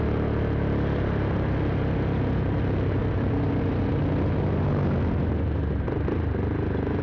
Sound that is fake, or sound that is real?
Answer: real